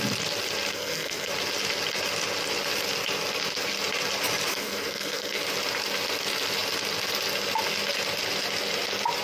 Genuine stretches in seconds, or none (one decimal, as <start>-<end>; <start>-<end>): 0.0-0.7; 1.3-4.5; 5.4-9.2